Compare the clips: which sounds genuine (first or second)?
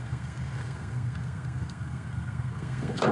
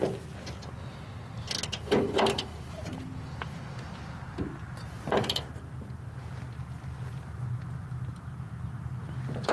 second